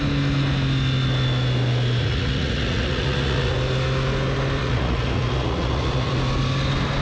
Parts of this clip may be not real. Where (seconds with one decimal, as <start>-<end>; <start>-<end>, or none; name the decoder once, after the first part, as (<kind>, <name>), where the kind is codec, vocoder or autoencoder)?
2.0-3.5 (vocoder, Vocos); 4.6-6.1